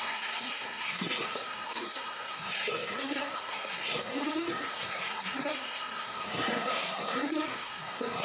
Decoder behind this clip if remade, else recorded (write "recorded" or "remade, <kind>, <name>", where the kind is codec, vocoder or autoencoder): remade, codec, SNAC